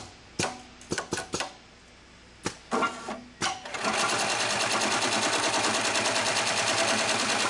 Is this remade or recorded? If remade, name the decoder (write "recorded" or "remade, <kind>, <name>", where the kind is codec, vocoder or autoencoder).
recorded